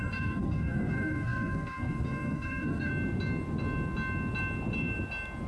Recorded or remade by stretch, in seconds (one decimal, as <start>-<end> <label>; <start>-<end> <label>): 0.0-2.9 remade; 2.9-5.5 recorded